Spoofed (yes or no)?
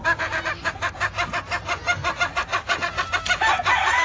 no